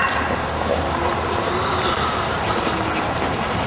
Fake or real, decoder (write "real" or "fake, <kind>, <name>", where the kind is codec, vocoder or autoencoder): real